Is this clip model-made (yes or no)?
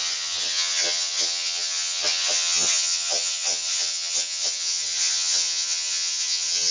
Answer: yes